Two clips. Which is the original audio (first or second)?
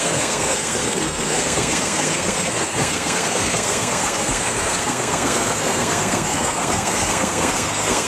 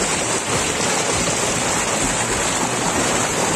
second